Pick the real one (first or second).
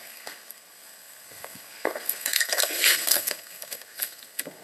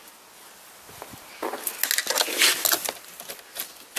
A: second